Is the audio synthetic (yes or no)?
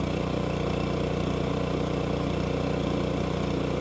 no